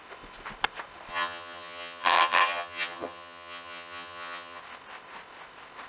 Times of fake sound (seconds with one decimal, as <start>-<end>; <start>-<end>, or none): 1.1-4.6